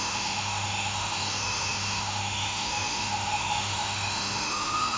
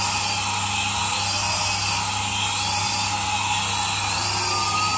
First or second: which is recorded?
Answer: second